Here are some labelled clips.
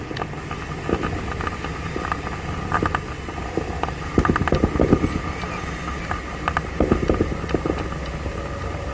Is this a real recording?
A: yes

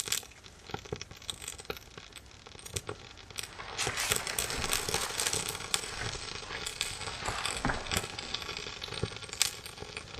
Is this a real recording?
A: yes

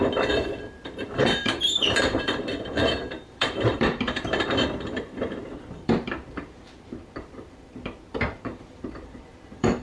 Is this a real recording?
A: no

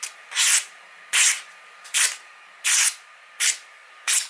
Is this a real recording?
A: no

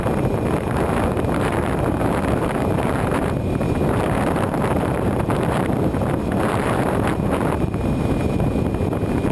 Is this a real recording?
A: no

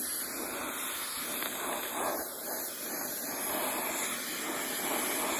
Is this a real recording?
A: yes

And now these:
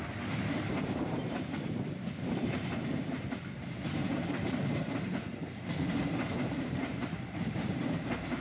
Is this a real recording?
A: no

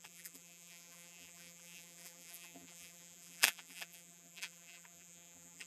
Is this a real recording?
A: no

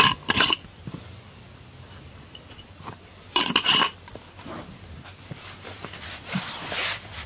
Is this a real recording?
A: no